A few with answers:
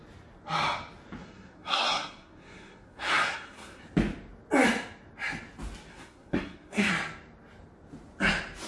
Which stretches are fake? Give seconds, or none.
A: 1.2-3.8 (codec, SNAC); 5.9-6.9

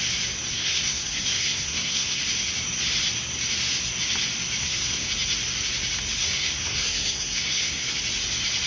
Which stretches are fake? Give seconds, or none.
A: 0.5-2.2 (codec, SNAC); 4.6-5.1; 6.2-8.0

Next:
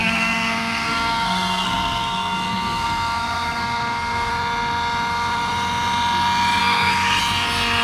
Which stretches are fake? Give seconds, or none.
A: 0.0-4.3 (codec, SNAC); 6.6-7.2

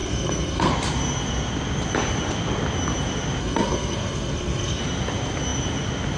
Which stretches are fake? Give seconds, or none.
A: 0.0-0.7 (codec, SNAC); 3.4-4.8

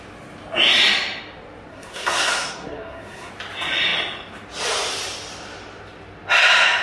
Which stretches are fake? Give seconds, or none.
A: 1.7-3.3 (codec, SNAC)

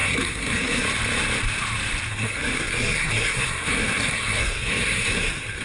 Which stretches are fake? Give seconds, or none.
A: 0.0-0.8 (codec, SNAC); 2.1-5.6

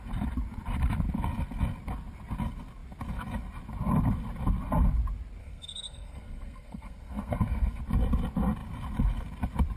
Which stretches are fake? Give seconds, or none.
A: 5.4-7.8 (codec, SNAC)